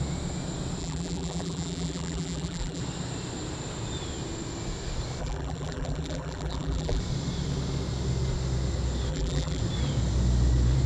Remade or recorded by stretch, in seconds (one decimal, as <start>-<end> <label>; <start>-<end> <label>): 0.0-0.8 recorded; 0.8-2.8 remade; 2.8-5.2 recorded; 5.2-7.0 remade; 7.0-9.1 recorded; 9.1-9.6 remade; 9.6-10.9 recorded